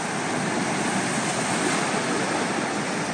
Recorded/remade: recorded